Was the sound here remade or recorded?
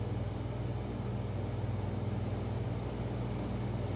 recorded